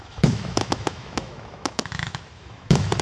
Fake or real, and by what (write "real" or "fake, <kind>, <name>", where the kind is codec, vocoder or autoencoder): fake, autoencoder, DAC-VAE